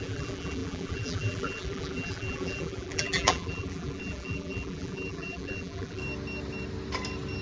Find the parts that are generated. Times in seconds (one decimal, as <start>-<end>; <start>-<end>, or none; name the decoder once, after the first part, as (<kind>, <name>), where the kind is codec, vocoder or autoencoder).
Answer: 0.0-6.0 (vocoder, BigVGAN v2)